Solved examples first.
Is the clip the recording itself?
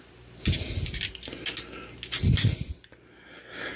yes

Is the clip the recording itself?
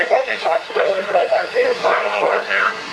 no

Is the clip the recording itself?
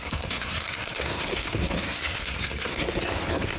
no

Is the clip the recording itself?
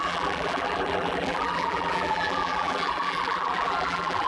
no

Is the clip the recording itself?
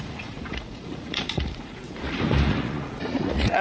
no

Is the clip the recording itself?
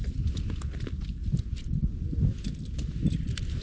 yes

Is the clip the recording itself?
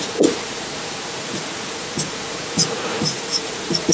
no